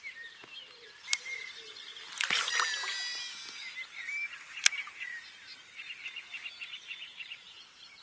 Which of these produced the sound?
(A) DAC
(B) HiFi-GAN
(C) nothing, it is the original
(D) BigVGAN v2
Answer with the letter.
C